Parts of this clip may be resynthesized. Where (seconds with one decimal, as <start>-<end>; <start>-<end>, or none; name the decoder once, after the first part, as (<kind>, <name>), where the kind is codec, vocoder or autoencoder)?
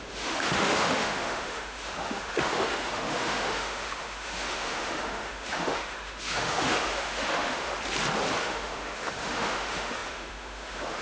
0.0-7.7 (autoencoder, DAC-VAE); 8.4-11.0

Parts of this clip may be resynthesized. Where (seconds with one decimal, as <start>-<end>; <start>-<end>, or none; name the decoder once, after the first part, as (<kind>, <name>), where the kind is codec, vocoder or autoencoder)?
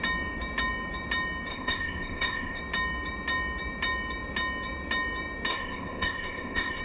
1.5-2.6 (codec, ZipCodec); 5.5-6.8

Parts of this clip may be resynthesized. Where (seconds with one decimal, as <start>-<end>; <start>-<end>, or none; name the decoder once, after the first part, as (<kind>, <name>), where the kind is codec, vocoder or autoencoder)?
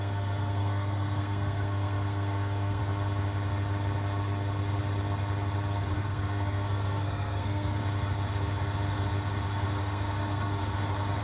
0.0-2.8 (codec, SNAC); 5.9-7.8; 9.8-10.6